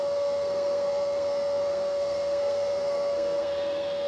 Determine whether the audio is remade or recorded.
remade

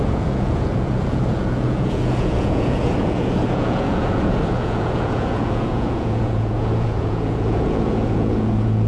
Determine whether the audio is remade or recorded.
remade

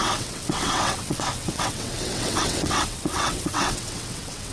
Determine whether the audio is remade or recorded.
remade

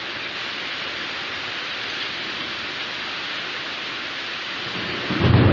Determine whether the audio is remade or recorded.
recorded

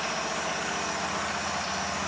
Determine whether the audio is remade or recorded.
recorded